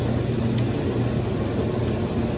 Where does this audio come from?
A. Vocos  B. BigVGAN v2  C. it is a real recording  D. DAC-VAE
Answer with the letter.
C